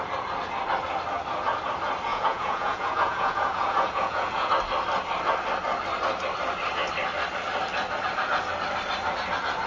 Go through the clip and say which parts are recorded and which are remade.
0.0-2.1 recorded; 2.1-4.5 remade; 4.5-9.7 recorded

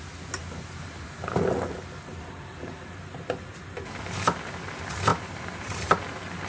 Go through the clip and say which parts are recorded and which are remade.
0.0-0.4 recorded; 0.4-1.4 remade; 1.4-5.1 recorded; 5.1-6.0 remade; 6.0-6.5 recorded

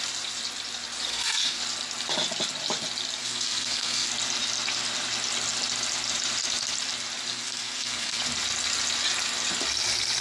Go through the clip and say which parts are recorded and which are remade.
0.0-1.1 recorded; 1.1-1.6 remade; 1.6-3.2 recorded; 3.2-4.1 remade; 4.1-7.3 recorded; 7.3-8.2 remade; 8.2-10.2 recorded

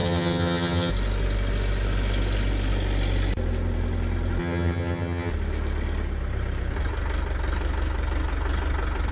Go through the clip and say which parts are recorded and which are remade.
0.0-0.9 remade; 0.9-4.4 recorded; 4.4-5.3 remade; 5.3-9.1 recorded

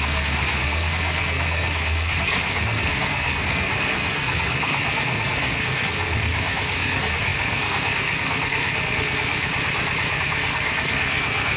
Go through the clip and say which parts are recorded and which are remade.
0.0-9.5 remade; 9.5-10.1 recorded; 10.1-11.6 remade

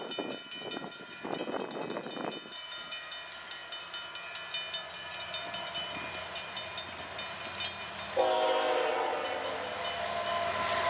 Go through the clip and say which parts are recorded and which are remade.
0.0-10.9 recorded